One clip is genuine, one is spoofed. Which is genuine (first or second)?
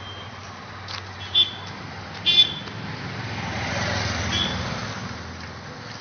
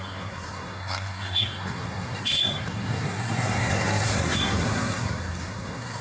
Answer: first